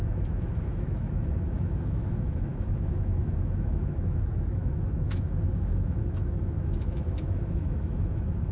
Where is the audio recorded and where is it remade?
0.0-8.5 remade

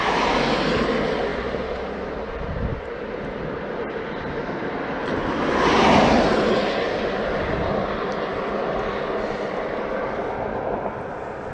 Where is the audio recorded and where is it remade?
0.0-11.5 recorded

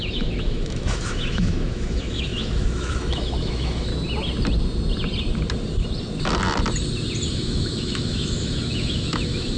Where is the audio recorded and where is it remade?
0.0-3.9 remade; 3.9-7.3 recorded; 7.3-9.6 remade